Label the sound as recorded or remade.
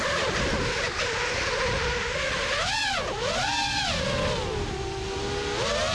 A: recorded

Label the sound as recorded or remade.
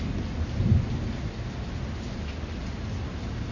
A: recorded